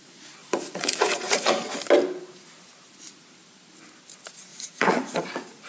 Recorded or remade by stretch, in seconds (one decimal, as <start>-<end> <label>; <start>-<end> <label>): 0.0-0.4 recorded; 0.4-1.5 remade; 1.5-4.5 recorded; 4.5-5.7 remade